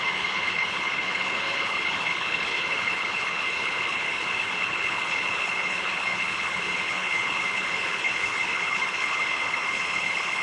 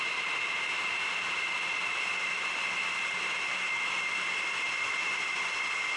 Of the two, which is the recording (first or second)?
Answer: second